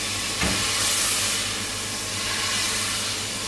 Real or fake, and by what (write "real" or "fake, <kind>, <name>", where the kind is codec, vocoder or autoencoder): real